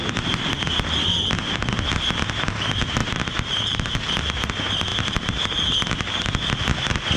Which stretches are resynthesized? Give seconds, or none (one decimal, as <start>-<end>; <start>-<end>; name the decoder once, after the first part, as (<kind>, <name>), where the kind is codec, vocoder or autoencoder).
3.0-4.0 (vocoder, BigVGAN v2)